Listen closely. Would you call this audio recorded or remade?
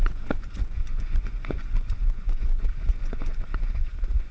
remade